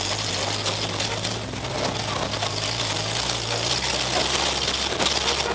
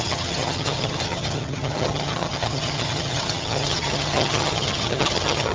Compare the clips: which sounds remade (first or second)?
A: second